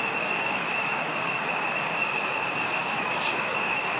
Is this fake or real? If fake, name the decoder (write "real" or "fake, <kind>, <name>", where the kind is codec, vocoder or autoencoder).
fake, codec, DAC